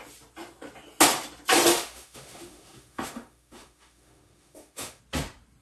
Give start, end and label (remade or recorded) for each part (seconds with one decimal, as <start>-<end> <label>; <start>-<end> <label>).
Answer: 0.0-1.7 recorded; 1.7-5.0 remade; 5.0-5.6 recorded